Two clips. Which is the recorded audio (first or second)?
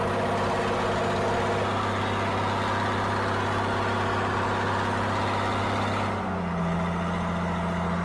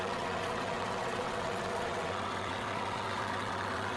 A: first